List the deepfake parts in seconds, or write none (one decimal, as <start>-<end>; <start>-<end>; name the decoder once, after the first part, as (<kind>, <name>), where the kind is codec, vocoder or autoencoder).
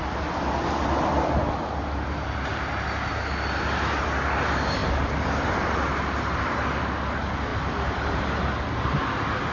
none